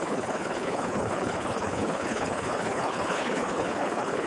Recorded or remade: remade